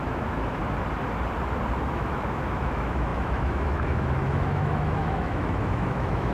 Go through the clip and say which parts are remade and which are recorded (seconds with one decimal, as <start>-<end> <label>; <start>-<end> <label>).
0.0-0.6 remade; 0.6-1.9 recorded; 1.9-6.3 remade